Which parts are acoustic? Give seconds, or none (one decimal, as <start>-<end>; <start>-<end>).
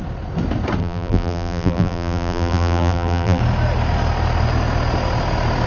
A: 0.0-0.8; 3.4-5.7